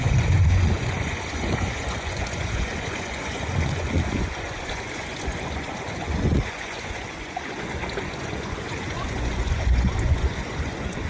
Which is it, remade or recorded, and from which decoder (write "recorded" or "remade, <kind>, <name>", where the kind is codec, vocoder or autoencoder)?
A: remade, vocoder, Vocos